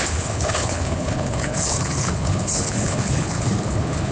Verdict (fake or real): fake